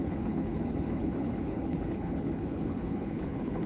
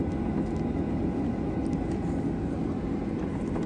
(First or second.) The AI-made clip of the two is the first